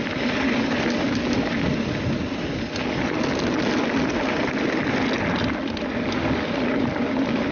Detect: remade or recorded recorded